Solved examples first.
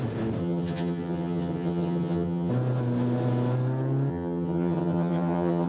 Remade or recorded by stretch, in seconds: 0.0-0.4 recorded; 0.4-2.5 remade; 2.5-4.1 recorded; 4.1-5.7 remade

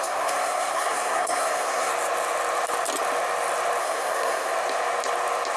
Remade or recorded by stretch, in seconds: 0.0-1.9 remade; 1.9-3.8 recorded; 3.8-4.5 remade; 4.5-5.6 recorded

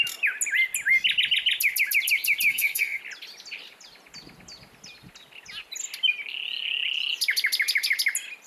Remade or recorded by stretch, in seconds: 0.0-2.5 recorded; 2.5-3.0 remade; 3.0-8.5 recorded

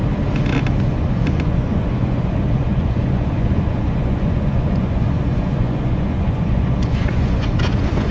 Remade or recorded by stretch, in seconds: 0.0-0.8 recorded; 0.8-8.1 remade

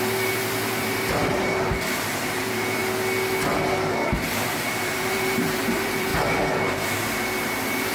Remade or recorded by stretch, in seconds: 0.0-2.8 remade; 2.8-3.9 recorded; 3.9-6.1 remade; 6.1-6.6 recorded; 6.6-7.9 remade

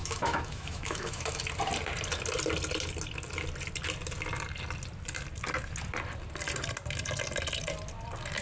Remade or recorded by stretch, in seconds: 0.0-1.4 remade; 1.4-8.4 recorded